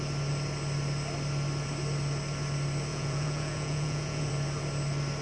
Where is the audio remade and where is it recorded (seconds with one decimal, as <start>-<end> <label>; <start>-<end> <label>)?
0.0-2.9 recorded; 2.9-4.3 remade; 4.3-5.2 recorded